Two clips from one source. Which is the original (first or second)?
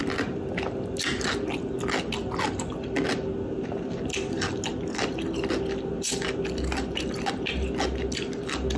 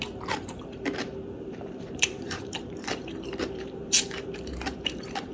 first